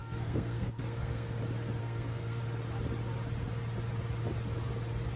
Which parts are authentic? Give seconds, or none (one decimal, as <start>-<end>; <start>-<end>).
1.4-1.8; 2.4-5.2